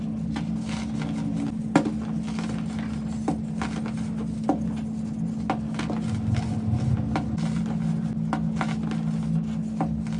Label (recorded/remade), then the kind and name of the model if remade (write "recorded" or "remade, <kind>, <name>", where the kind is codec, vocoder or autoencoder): recorded